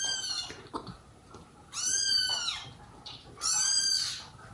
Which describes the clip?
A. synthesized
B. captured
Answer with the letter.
B